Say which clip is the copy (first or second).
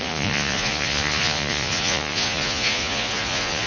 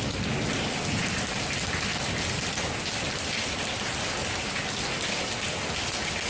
first